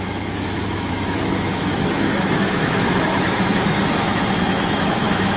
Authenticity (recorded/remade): remade